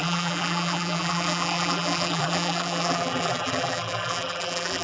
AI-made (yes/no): yes